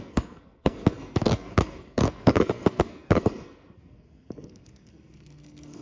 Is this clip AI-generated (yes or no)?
yes